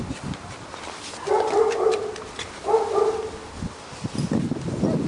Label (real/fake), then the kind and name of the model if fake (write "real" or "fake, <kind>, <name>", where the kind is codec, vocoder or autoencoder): real